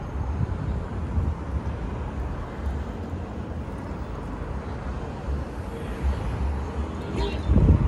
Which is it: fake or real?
real